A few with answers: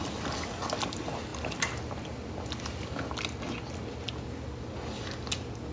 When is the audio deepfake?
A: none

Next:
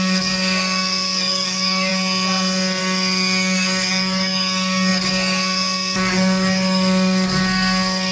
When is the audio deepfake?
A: 0.0-1.9 (codec, DAC); 2.8-8.1

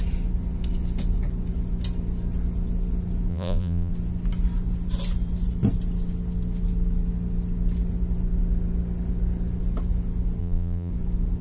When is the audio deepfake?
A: 3.3-3.9 (vocoder, BigVGAN v2); 10.4-10.9

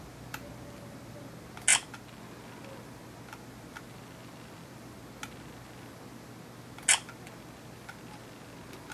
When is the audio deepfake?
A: none

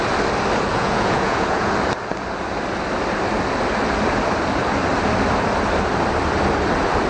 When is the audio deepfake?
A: 0.7-1.7 (vocoder, Vocos)

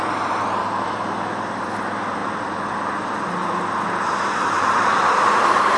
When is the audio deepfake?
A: none